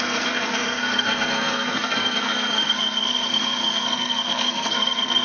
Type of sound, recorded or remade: remade